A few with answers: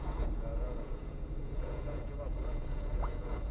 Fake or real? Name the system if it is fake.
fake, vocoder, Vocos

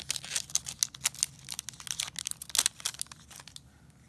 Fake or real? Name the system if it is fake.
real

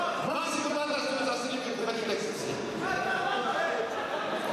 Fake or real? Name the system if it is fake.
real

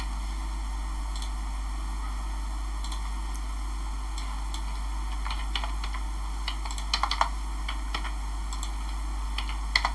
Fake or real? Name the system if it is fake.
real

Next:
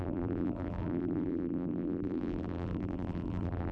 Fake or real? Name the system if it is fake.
fake, vocoder, BigVGAN v2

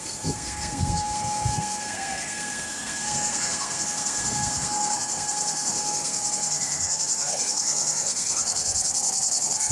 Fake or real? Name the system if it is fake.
fake, codec, SNAC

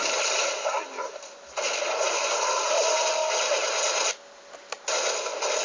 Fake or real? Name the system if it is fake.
real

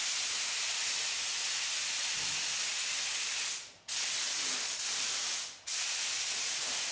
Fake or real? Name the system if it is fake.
real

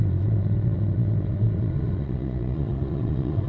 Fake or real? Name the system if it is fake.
fake, vocoder, Vocos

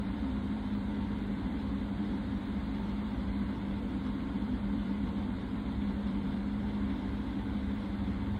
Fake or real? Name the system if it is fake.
fake, vocoder, BigVGAN v2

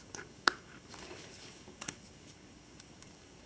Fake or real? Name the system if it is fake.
fake, codec, DAC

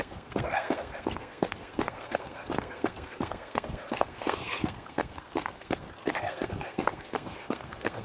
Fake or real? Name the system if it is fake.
fake, codec, SNAC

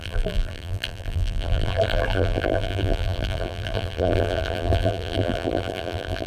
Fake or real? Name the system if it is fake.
fake, vocoder, BigVGAN v2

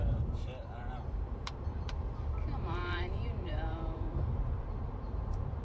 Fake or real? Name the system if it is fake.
fake, vocoder, BigVGAN v2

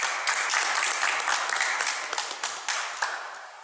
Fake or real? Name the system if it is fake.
real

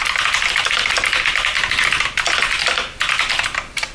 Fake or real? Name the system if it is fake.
real